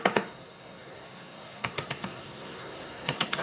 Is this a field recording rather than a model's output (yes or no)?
no